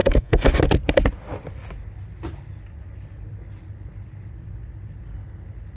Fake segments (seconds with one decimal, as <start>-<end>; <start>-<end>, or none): 0.0-0.6